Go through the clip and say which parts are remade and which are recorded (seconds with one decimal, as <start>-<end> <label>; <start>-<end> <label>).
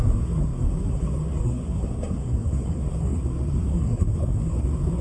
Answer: 0.0-5.0 remade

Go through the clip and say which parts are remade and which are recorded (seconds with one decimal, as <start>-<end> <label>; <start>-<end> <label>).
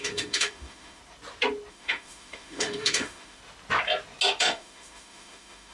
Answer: 0.0-1.0 remade; 1.0-1.7 recorded; 1.7-3.4 remade; 3.4-4.4 recorded; 4.4-5.7 remade